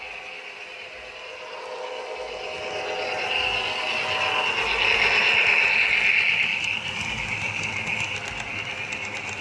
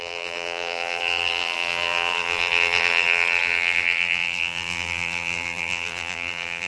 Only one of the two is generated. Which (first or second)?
second